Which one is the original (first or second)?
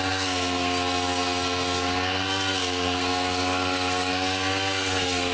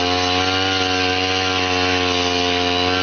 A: second